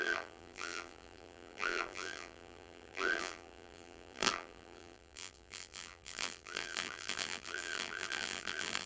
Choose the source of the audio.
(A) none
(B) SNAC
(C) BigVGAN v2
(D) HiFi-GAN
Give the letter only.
C